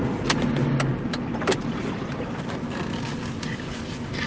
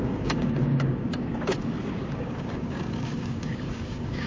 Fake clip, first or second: second